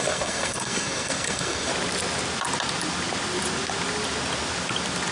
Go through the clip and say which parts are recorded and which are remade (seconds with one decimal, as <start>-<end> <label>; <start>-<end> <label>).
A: 0.0-1.7 remade; 1.7-5.1 recorded